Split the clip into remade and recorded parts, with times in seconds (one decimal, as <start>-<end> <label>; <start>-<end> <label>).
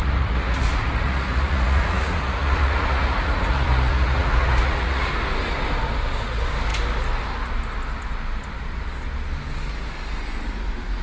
0.0-5.1 remade; 5.1-11.0 recorded